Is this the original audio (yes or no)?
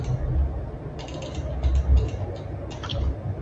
yes